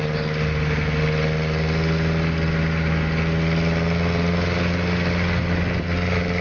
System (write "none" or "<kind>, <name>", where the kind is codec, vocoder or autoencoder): none